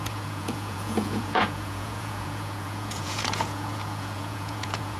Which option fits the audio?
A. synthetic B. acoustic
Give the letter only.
A